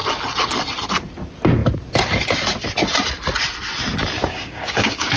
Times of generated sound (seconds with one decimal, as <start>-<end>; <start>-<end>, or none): 4.2-5.2